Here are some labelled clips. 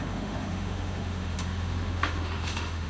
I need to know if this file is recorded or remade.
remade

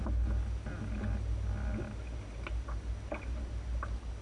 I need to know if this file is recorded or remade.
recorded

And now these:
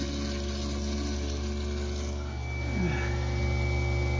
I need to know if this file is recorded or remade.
recorded